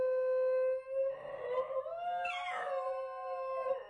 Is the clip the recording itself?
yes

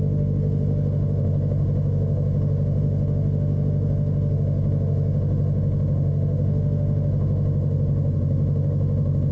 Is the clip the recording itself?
no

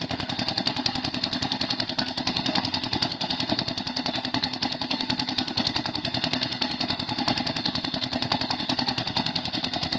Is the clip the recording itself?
no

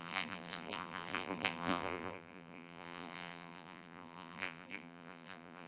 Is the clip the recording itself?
no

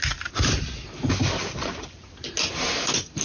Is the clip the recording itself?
yes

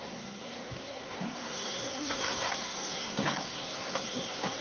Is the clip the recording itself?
no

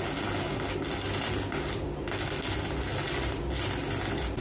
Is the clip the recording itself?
yes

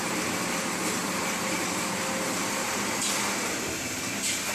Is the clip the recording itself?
yes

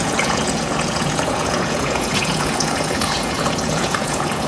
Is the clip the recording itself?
no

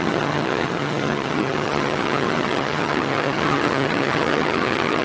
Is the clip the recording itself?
no